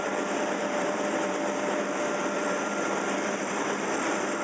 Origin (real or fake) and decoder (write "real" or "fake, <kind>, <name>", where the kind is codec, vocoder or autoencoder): fake, vocoder, BigVGAN v2